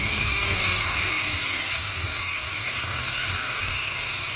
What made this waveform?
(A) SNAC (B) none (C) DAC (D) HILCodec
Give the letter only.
C